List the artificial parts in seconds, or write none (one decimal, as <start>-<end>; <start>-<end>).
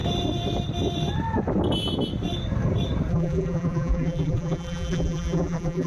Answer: 3.1-5.9